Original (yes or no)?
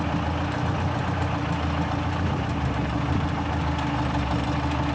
yes